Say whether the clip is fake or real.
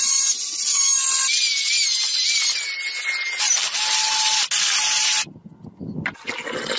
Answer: real